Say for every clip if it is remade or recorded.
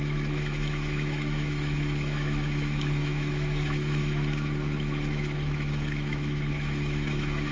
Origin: remade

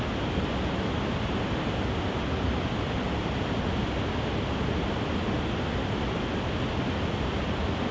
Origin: recorded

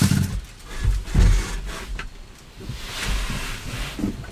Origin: recorded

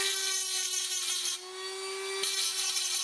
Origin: recorded